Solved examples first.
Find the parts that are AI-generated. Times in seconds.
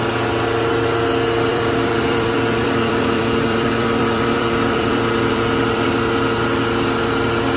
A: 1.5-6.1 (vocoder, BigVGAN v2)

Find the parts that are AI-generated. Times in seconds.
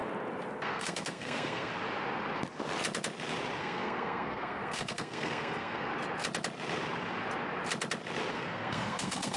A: 0.6-1.7 (codec, SNAC); 3.6-5.9; 8.3-9.4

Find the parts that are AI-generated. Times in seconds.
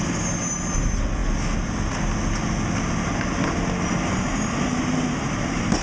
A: none